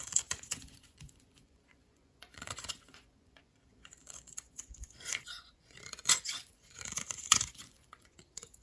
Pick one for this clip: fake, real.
fake